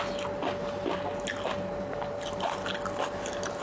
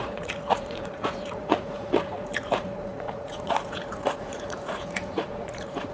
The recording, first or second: first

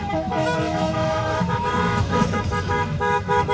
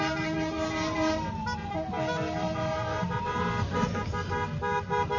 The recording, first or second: second